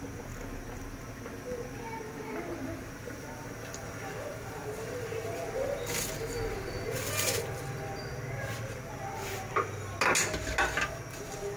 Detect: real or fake real